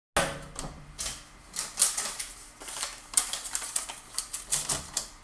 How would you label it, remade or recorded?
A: recorded